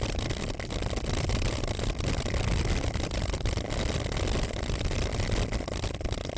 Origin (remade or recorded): recorded